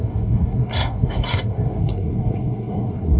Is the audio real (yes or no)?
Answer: no